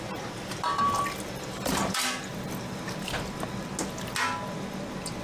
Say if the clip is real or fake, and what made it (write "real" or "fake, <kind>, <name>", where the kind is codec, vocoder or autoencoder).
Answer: real